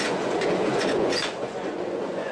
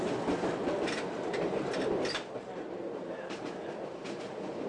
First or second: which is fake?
first